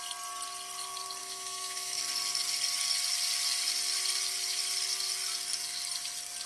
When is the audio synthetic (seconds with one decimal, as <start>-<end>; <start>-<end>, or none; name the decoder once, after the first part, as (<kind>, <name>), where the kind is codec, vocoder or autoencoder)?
1.2-2.0 (autoencoder, DAC-VAE)